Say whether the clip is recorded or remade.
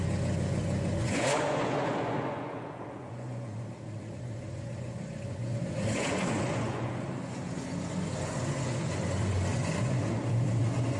remade